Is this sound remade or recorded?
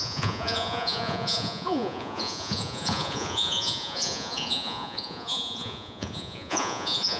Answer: remade